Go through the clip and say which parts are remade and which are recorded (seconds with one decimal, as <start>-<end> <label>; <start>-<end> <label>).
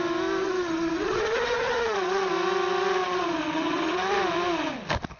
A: 0.0-0.4 recorded; 0.4-2.3 remade; 2.3-3.0 recorded; 3.0-4.1 remade; 4.1-5.2 recorded